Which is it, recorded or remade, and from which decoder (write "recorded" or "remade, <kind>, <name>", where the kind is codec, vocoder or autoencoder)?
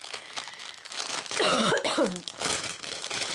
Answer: remade, autoencoder, DAC-VAE